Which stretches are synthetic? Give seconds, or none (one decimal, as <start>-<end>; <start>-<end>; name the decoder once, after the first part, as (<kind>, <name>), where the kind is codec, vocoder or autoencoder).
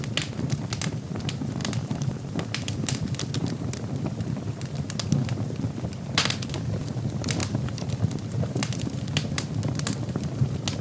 1.6-3.5 (vocoder, BigVGAN v2); 5.2-6.0; 7.4-9.5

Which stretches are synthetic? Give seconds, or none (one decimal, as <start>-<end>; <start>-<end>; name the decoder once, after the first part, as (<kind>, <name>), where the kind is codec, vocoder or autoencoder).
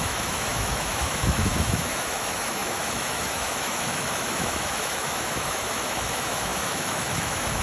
0.0-7.6 (autoencoder, DAC-VAE)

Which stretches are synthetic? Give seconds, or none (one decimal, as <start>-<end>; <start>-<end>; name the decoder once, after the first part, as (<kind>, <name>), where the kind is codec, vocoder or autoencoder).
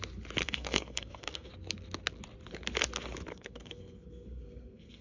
0.4-1.5 (codec, SNAC); 3.3-5.0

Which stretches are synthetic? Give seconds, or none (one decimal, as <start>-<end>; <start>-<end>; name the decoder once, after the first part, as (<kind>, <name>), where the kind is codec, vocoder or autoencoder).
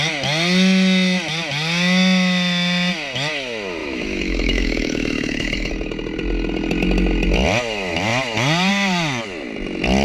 3.8-5.7 (autoencoder, DAC-VAE)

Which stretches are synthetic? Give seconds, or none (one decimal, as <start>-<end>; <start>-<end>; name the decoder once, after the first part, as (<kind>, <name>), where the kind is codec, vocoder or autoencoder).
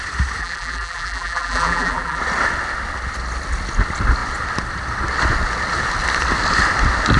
0.4-2.2 (vocoder, BigVGAN v2)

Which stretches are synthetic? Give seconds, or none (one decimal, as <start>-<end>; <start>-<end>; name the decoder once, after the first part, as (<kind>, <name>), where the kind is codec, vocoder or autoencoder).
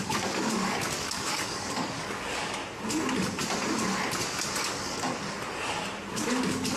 0.0-2.6 (codec, DAC); 4.6-5.1; 6.1-6.8